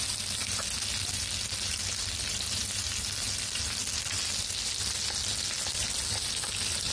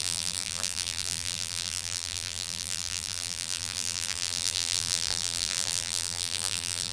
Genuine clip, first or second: first